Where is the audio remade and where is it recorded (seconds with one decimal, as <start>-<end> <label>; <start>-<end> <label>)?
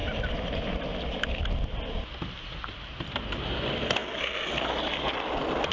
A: 0.0-5.7 recorded